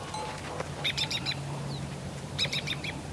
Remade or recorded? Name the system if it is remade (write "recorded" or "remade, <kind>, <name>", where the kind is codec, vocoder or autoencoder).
remade, vocoder, BigVGAN v2